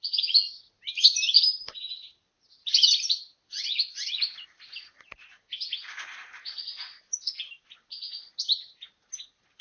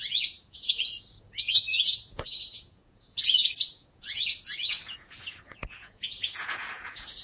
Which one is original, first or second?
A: first